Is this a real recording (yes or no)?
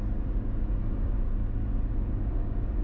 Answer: yes